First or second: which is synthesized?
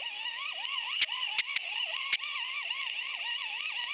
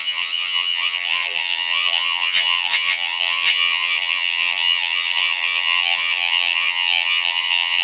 second